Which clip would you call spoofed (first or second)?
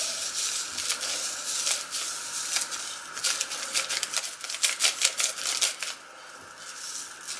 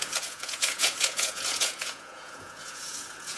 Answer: second